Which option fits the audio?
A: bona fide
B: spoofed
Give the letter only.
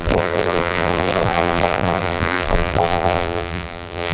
B